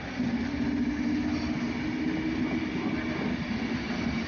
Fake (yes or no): no